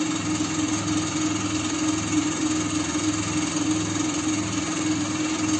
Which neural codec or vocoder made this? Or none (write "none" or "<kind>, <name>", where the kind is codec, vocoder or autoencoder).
none